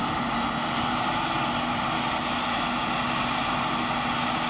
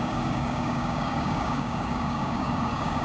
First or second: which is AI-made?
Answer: second